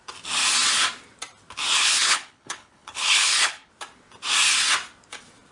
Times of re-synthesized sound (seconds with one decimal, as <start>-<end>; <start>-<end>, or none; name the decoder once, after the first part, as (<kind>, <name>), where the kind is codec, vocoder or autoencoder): 1.8-3.7 (codec, HILCodec)